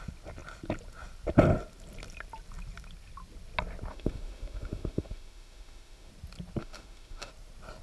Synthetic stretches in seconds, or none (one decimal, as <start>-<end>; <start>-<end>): 3.9-6.1; 6.6-7.3